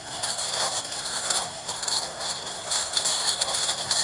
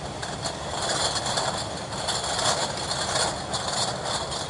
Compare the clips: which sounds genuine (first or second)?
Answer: second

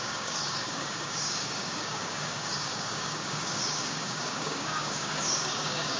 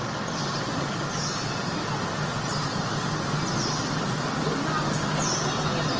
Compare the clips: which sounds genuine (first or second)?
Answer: second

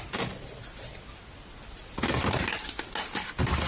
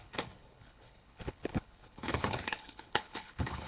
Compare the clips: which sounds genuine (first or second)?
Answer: first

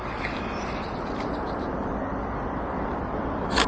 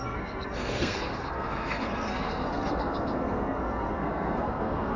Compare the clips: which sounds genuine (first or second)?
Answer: first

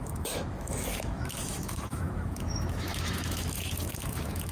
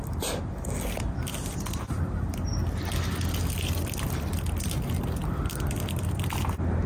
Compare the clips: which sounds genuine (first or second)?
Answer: second